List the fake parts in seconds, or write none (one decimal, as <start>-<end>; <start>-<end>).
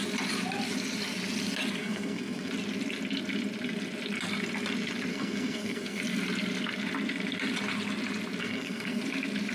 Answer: 1.8-2.5; 5.1-6.0; 8.4-9.0